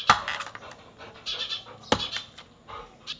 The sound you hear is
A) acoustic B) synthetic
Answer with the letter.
A